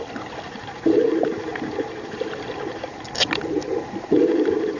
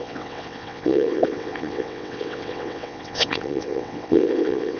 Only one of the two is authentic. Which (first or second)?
first